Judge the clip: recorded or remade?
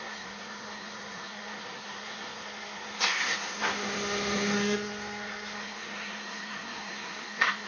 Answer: remade